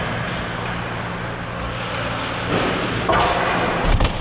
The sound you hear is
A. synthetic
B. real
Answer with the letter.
B